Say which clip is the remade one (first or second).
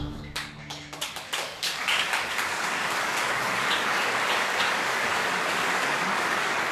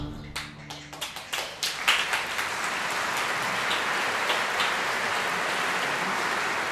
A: first